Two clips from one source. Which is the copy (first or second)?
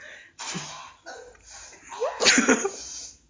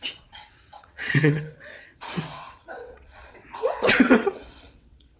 second